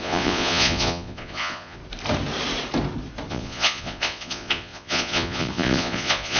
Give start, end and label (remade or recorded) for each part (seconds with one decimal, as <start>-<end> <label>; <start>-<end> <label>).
0.0-1.8 remade; 1.8-3.3 recorded; 3.3-6.4 remade